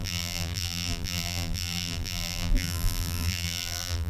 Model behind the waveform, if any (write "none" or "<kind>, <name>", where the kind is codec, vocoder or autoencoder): vocoder, BigVGAN v2